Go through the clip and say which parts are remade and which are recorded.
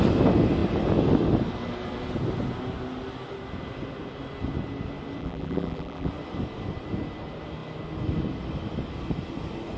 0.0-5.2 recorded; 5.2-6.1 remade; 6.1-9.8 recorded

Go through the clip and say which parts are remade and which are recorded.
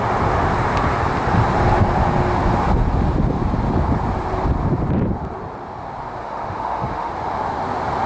0.0-6.2 recorded; 6.2-7.1 remade; 7.1-8.1 recorded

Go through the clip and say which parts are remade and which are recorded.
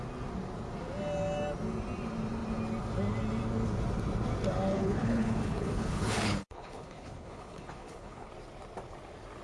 0.0-4.7 recorded; 4.7-8.3 remade; 8.3-9.4 recorded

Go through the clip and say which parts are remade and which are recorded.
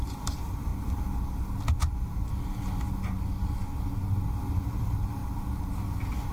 0.0-0.7 remade; 0.7-4.5 recorded; 4.5-5.2 remade; 5.2-6.3 recorded